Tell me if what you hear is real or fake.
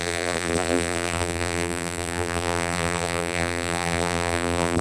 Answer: fake